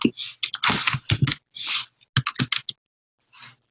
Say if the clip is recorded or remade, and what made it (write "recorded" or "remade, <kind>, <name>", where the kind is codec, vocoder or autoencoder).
recorded